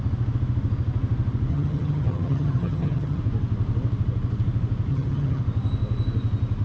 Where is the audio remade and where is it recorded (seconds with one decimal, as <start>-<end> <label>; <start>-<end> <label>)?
0.0-1.5 recorded; 1.5-3.2 remade; 3.2-4.9 recorded; 4.9-5.4 remade; 5.4-6.6 recorded